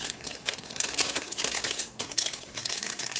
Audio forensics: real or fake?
fake